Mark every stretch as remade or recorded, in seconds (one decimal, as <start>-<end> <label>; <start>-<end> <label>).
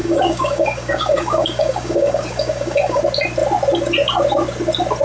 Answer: 0.0-3.0 remade; 3.0-5.0 recorded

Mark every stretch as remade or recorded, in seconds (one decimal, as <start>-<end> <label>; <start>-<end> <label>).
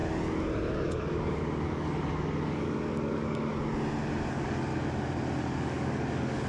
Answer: 0.0-0.7 recorded; 0.7-3.5 remade; 3.5-4.3 recorded; 4.3-4.7 remade; 4.7-5.4 recorded; 5.4-6.5 remade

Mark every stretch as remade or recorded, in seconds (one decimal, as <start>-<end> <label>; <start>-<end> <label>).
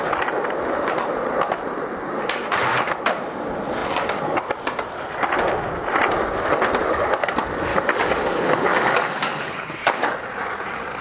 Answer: 0.0-6.8 recorded; 6.8-7.3 remade; 7.3-7.7 recorded; 7.7-10.1 remade; 10.1-11.0 recorded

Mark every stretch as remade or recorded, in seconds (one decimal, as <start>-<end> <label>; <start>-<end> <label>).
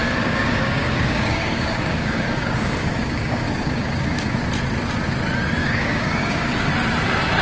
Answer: 0.0-4.3 remade; 4.3-5.6 recorded; 5.6-6.7 remade; 6.7-7.4 recorded